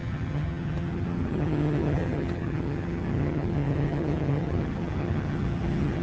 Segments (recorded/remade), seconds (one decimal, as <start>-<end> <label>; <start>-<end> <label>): 0.0-6.0 remade